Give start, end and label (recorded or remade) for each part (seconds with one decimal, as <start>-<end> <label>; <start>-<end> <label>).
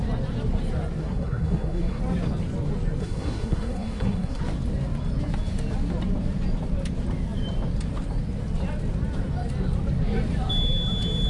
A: 0.0-1.0 recorded; 1.0-2.0 remade; 2.0-3.0 recorded; 3.0-4.4 remade; 4.4-11.3 recorded